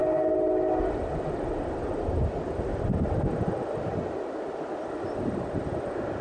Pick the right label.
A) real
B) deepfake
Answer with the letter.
A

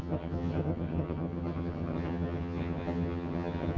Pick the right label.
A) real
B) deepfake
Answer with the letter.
B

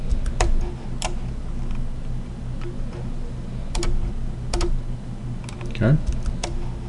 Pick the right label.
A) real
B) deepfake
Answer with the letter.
A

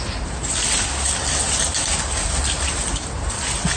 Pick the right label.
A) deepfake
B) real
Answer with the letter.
B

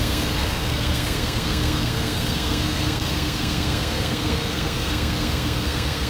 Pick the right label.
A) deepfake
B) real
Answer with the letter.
A